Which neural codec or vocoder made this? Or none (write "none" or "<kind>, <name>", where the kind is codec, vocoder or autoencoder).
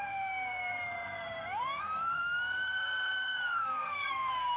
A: codec, SNAC